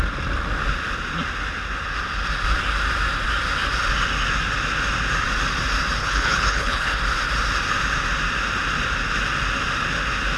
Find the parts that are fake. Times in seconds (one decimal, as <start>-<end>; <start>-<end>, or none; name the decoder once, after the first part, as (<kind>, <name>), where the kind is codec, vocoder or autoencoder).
6.0-7.0 (codec, HILCodec)